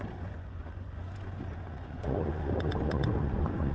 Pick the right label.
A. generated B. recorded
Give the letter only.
A